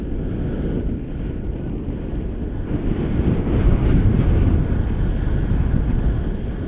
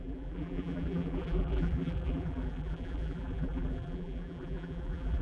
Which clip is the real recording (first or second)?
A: first